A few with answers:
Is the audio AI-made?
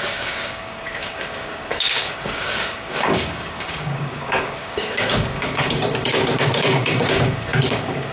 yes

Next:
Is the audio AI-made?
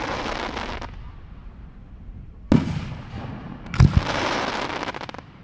no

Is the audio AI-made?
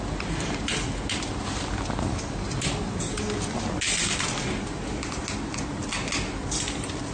no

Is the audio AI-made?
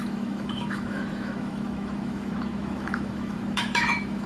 yes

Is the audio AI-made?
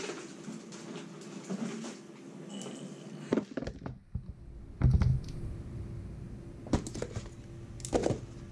no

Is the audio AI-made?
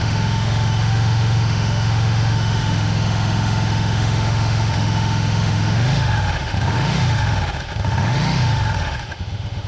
yes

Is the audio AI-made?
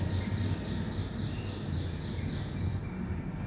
no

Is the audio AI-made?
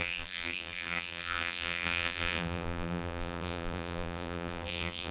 yes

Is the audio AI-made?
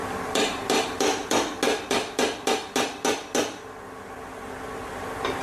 no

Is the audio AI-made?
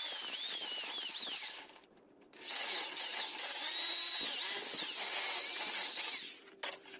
no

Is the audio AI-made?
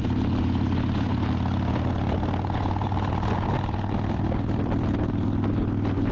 no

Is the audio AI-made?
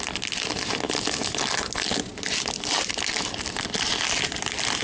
no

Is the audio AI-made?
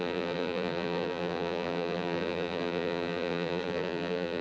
yes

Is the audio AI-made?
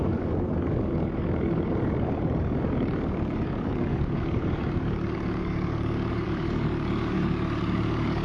yes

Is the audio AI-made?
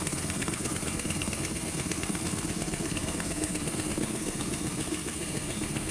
yes